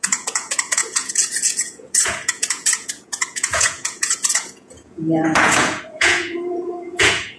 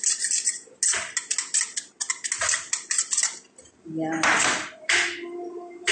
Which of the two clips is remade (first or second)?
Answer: first